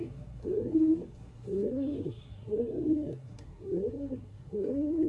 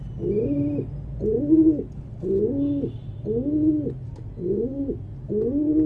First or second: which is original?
second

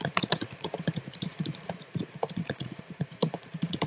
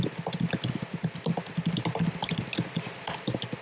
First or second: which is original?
second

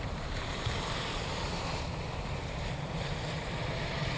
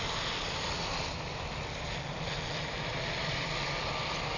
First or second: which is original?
second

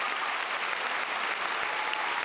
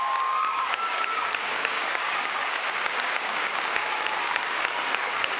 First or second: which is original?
first